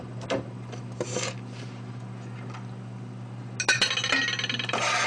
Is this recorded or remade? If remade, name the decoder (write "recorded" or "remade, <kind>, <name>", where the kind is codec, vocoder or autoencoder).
recorded